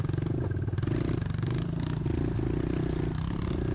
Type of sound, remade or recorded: recorded